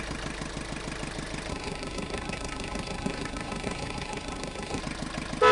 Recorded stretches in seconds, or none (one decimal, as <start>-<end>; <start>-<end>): 0.0-1.5; 4.8-5.5